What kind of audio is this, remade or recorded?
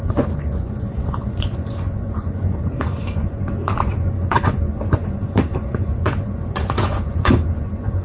remade